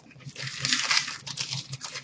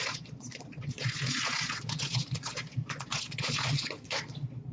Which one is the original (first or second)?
first